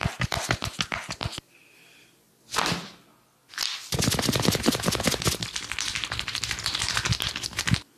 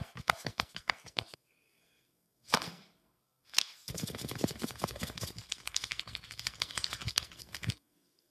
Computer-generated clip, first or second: second